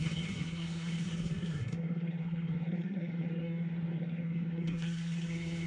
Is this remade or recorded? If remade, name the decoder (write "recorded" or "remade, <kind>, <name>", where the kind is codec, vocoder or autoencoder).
remade, codec, SNAC